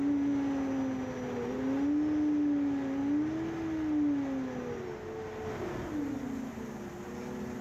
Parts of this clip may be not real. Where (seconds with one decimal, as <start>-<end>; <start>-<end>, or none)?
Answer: none